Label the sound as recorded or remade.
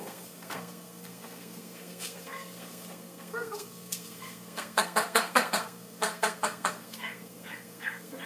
remade